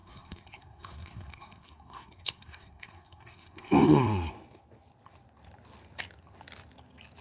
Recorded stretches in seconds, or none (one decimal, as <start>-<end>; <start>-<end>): 4.3-7.2